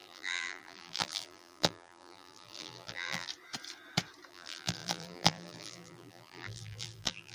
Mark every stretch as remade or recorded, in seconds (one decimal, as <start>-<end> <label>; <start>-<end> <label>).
0.0-3.3 remade; 3.3-4.3 recorded; 4.3-7.3 remade